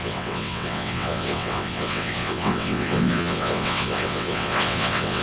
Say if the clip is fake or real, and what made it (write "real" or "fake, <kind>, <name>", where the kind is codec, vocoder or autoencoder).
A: fake, vocoder, WaveNeXt